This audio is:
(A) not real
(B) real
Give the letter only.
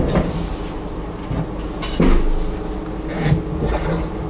B